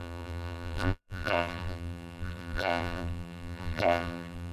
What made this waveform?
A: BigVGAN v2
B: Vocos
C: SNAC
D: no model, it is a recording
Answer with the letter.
A